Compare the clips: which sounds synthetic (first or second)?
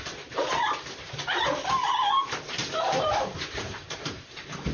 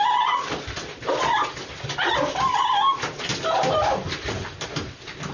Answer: first